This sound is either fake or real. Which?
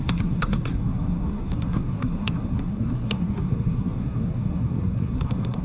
fake